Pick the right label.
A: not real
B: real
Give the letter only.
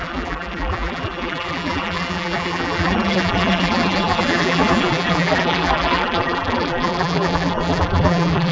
A